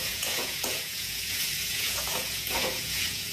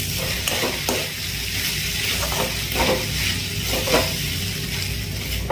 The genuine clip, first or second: second